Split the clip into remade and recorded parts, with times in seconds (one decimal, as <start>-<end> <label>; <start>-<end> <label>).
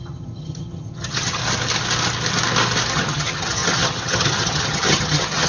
0.0-1.4 remade; 1.4-2.9 recorded; 2.9-5.5 remade